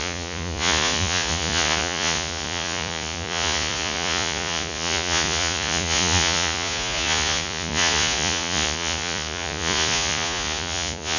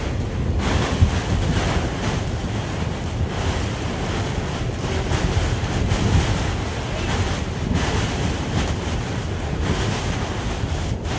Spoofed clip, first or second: first